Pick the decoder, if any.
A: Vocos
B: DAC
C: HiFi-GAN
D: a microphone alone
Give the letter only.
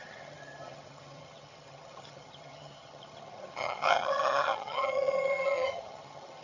C